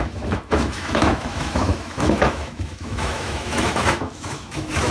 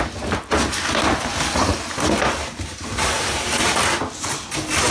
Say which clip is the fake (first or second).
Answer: first